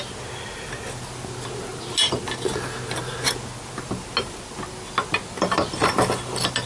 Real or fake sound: real